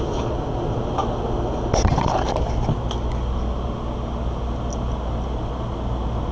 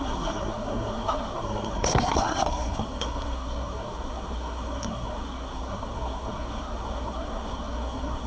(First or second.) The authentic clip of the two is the first